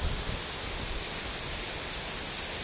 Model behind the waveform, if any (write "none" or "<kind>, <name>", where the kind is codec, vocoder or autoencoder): none